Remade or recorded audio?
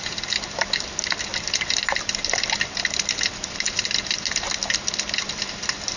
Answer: recorded